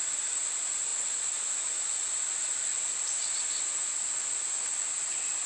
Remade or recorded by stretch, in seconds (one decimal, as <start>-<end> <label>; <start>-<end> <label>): 0.0-5.5 recorded